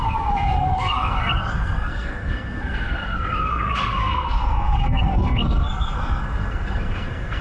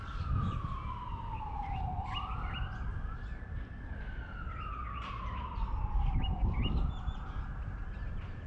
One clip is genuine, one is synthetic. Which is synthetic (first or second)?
first